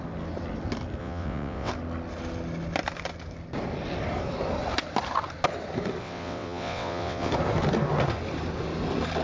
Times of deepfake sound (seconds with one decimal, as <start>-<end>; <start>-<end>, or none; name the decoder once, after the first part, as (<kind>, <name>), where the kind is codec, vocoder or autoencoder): 1.0-1.7 (vocoder, WaveNeXt); 6.0-7.3